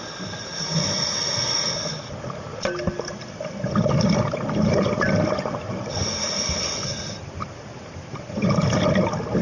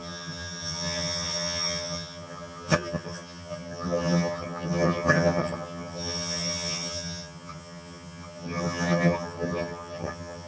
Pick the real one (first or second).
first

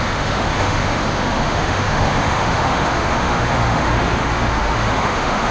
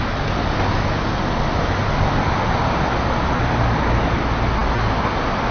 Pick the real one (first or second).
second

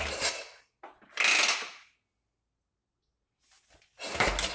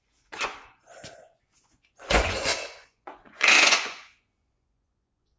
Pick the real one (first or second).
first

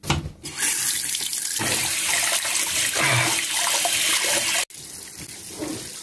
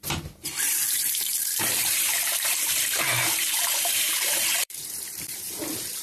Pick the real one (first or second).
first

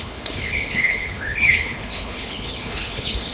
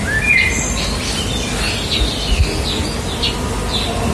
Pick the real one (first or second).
second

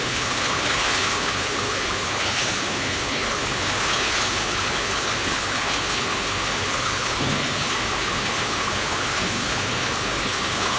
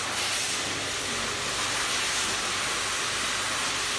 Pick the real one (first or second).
second